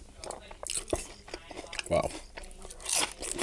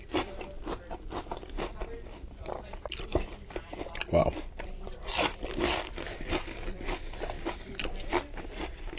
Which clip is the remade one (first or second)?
second